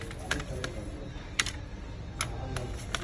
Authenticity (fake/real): real